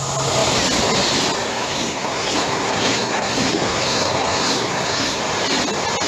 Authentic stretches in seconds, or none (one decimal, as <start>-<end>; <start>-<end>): 0.0-1.5; 5.2-6.1